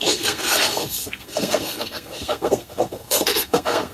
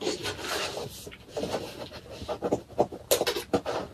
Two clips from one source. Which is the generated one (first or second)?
first